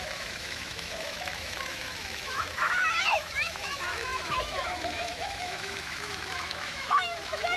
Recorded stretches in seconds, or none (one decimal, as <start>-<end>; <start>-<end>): none